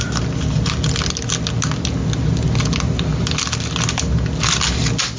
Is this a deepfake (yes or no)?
no